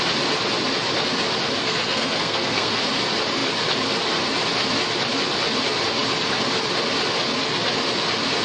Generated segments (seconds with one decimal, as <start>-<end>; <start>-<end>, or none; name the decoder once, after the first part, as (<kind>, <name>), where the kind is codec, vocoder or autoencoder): 1.6-2.8 (codec, SNAC)